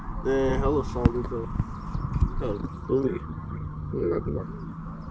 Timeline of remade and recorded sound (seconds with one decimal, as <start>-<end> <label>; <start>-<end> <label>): 0.0-2.6 recorded; 2.6-4.4 remade; 4.4-5.1 recorded